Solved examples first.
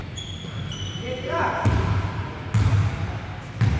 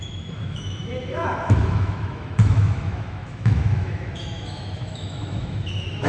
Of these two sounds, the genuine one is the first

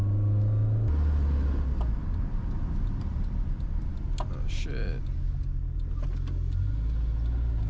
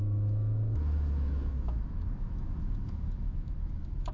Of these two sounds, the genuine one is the first